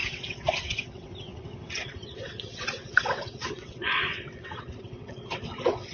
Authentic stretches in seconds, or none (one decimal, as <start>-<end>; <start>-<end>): none